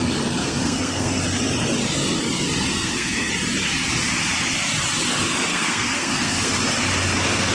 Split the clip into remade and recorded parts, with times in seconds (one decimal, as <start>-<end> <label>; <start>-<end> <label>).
0.0-0.4 recorded; 0.4-1.2 remade; 1.2-2.7 recorded; 2.7-3.3 remade; 3.3-5.5 recorded; 5.5-6.5 remade; 6.5-7.5 recorded